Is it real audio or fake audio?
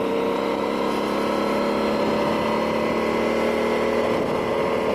real